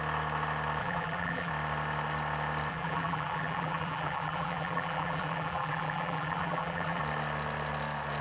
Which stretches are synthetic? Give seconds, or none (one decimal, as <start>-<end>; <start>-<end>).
0.8-1.5; 2.7-7.0